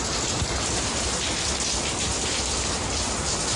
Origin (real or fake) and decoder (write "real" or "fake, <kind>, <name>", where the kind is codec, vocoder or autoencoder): fake, vocoder, BigVGAN v2